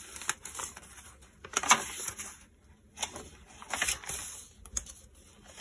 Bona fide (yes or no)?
yes